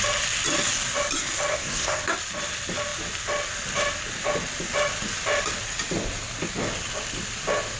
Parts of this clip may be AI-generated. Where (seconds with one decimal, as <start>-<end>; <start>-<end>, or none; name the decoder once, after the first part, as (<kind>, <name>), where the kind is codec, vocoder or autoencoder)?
1.5-2.0 (codec, SNAC)

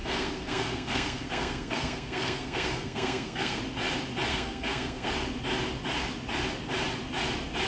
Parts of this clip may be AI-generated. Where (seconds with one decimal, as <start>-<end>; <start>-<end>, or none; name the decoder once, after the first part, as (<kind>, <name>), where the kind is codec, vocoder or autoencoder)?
0.0-3.6 (codec, SNAC); 4.3-5.1